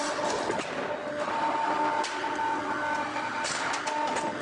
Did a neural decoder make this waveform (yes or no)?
no